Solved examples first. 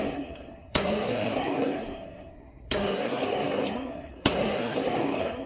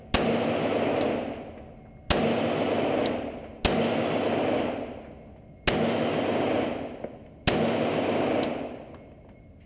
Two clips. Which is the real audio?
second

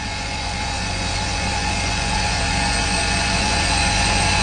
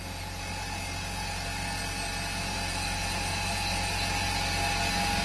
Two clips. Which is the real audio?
second